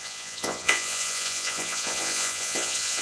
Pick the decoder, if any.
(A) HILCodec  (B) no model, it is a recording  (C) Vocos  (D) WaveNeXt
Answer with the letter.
C